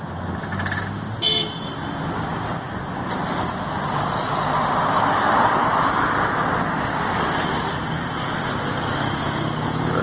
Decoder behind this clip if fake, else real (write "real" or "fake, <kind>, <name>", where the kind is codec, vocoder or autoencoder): real